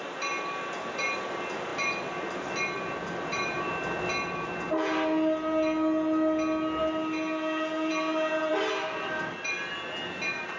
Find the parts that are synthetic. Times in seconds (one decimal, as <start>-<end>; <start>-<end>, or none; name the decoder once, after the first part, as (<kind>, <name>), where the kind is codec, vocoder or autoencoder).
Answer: none